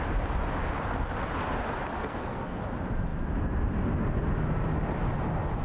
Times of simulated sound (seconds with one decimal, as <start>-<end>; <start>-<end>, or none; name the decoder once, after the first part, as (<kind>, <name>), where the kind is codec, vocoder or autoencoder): 2.0-2.6 (codec, SNAC)

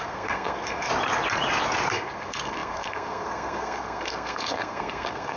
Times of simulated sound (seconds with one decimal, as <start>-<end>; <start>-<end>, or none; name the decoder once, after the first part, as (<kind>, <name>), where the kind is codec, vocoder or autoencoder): 0.0-0.9 (codec, SNAC); 1.9-5.4

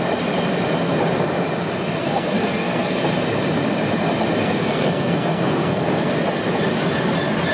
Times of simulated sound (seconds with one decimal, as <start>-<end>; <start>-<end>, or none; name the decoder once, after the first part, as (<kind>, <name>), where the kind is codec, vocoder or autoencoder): 2.0-3.0 (codec, SNAC); 4.4-6.1

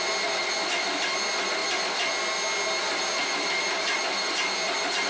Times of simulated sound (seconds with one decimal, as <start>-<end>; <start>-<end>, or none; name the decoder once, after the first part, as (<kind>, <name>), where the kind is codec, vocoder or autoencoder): none

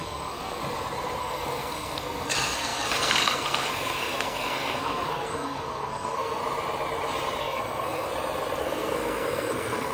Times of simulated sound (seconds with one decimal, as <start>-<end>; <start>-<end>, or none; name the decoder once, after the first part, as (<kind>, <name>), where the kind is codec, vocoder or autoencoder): 0.0-0.6 (codec, SNAC); 1.2-6.4; 7.4-8.1; 8.6-9.9